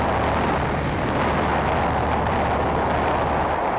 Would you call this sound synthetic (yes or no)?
no